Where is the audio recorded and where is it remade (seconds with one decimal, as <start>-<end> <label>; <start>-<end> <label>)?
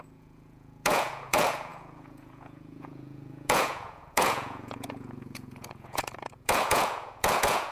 0.0-7.7 remade